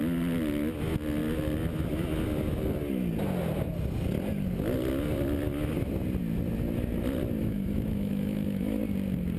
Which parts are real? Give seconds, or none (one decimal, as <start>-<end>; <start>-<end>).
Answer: 0.0-7.4; 8.8-9.4